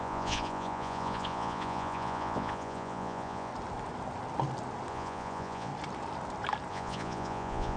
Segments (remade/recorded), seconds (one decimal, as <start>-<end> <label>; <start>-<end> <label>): 0.0-3.5 remade; 3.5-4.9 recorded; 4.9-5.7 remade; 5.7-6.7 recorded; 6.7-7.8 remade